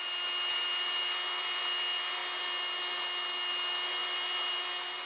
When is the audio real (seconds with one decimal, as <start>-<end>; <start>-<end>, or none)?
0.0-5.1